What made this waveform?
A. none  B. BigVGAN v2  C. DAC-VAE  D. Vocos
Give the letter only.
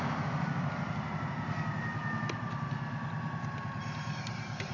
A